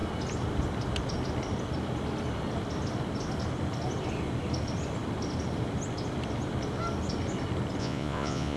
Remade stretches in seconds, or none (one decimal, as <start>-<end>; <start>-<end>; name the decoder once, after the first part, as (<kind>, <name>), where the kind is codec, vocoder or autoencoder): 7.8-8.6 (vocoder, Vocos)

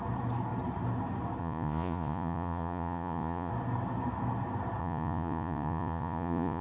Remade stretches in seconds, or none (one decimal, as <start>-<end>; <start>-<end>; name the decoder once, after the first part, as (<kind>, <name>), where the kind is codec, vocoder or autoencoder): 1.4-3.5 (vocoder, Vocos); 4.8-6.6

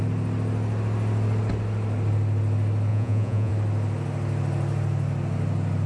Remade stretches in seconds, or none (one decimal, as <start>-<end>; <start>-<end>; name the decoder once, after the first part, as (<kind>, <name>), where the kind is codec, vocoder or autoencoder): 2.9-3.5 (vocoder, Vocos)

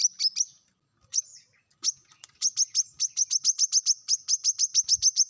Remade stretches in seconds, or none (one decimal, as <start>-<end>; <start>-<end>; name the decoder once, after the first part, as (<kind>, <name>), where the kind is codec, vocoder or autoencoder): none

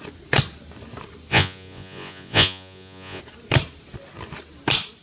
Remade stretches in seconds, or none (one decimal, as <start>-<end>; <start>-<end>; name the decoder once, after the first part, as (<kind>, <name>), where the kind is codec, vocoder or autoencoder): 1.3-3.2 (vocoder, Vocos)

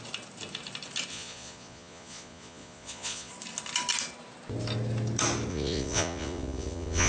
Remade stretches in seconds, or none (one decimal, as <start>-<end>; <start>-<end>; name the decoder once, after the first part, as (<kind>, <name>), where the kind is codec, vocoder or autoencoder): 1.1-3.3 (vocoder, Vocos); 5.5-7.1

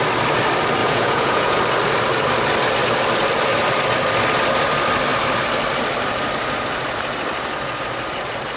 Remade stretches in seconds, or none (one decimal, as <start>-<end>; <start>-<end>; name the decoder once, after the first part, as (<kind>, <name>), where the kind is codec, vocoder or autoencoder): 0.8-1.6 (vocoder, Vocos)